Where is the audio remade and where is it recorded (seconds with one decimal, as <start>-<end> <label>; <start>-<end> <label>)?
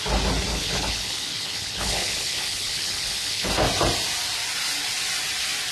0.0-0.5 recorded; 0.5-3.5 remade; 3.5-5.7 recorded